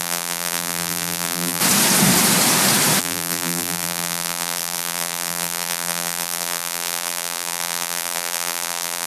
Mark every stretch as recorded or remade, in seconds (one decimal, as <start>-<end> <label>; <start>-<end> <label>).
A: 0.0-1.6 remade; 1.6-3.0 recorded; 3.0-9.1 remade